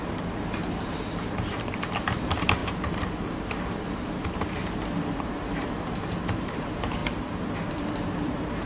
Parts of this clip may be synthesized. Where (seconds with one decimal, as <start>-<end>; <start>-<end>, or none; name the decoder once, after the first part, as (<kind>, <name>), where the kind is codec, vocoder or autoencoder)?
0.0-8.7 (vocoder, BigVGAN v2)